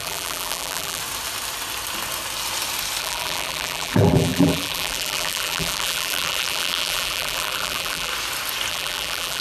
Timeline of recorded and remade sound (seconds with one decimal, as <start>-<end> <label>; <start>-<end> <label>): 0.0-1.0 remade; 1.0-3.0 recorded; 3.0-8.1 remade; 8.1-8.7 recorded; 8.7-9.4 remade